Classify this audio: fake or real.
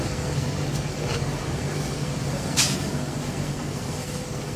fake